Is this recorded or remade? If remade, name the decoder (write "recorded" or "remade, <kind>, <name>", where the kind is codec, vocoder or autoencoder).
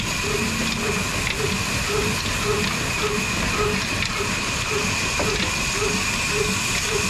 recorded